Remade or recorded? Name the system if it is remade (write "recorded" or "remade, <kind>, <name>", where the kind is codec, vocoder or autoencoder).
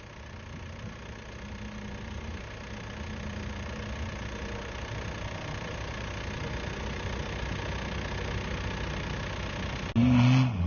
recorded